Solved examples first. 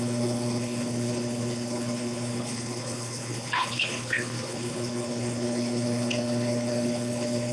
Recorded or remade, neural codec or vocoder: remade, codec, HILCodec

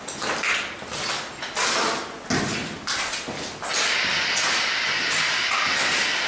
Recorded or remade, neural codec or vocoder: recorded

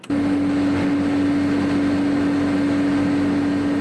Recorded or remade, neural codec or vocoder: recorded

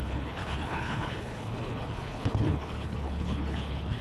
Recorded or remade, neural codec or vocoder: remade, codec, HILCodec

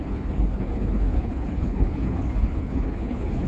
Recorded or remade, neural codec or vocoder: remade, codec, HILCodec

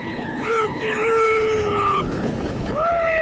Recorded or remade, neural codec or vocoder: remade, codec, HILCodec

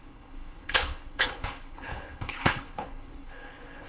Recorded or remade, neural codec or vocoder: remade, codec, HILCodec